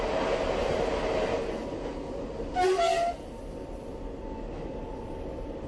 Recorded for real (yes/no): yes